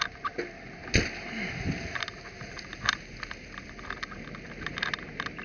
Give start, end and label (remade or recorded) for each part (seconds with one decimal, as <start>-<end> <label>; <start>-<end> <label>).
0.0-5.4 recorded